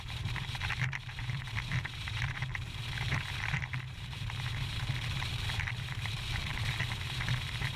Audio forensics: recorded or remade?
remade